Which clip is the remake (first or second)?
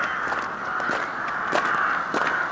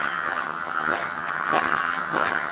second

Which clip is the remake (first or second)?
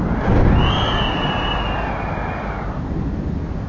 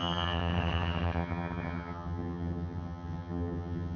second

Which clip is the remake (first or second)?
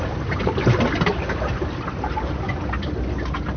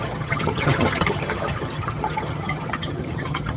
second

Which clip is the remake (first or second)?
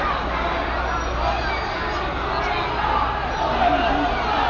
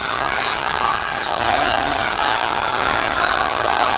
second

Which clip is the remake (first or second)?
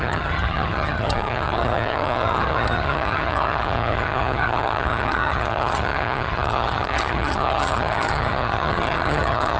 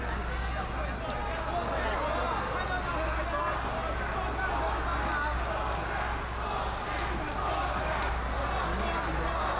first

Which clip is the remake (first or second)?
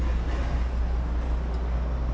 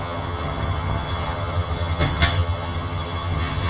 second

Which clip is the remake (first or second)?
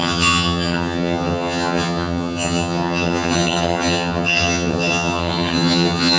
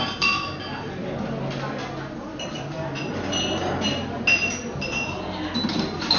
first